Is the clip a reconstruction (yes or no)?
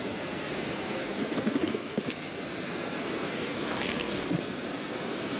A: yes